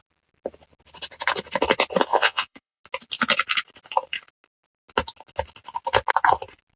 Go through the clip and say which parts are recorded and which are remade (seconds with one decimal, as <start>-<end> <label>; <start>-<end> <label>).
0.0-2.1 recorded; 2.1-2.8 remade; 2.8-6.8 recorded